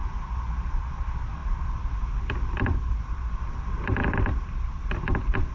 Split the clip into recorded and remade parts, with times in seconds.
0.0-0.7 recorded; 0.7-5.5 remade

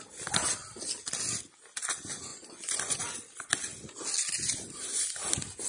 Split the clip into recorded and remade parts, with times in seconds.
0.0-2.3 recorded; 2.3-3.0 remade; 3.0-5.7 recorded

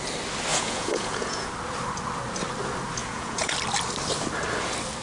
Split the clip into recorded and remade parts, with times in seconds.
0.0-0.5 recorded; 0.5-1.5 remade; 1.5-3.0 recorded; 3.0-3.5 remade; 3.5-5.0 recorded

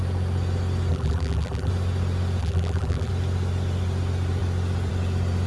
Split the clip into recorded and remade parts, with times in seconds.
0.0-0.9 recorded; 0.9-1.7 remade; 1.7-2.4 recorded; 2.4-3.1 remade; 3.1-5.5 recorded

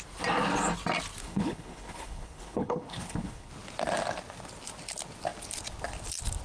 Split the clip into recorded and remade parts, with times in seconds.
0.0-1.2 recorded; 1.2-3.5 remade; 3.5-6.4 recorded